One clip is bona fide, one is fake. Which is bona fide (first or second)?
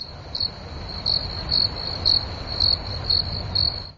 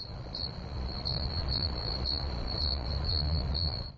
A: first